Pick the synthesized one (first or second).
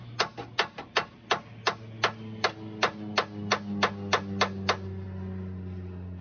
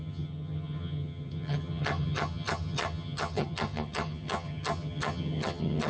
second